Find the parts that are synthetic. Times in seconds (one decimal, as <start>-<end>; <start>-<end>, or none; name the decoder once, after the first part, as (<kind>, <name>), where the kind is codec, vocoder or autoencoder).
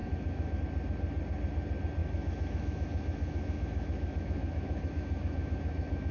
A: 0.0-0.6 (autoencoder, DAC-VAE); 2.0-6.1